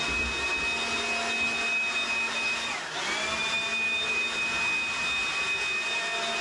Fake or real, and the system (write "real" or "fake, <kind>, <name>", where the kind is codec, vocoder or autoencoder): real